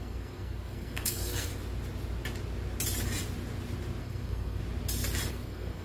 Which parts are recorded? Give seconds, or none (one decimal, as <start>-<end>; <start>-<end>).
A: 1.5-4.0; 4.6-5.3